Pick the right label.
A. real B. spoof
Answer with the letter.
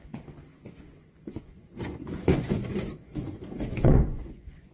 B